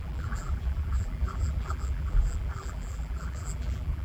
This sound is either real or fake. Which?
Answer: fake